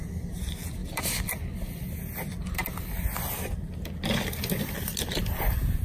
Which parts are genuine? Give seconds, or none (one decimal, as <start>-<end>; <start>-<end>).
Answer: 0.0-5.8